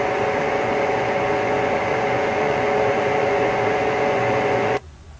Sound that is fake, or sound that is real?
fake